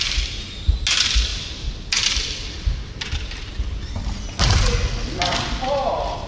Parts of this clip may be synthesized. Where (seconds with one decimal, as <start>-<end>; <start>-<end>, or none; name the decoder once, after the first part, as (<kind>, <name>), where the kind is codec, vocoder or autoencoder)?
1.3-3.4 (vocoder, BigVGAN v2)